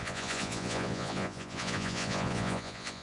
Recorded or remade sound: remade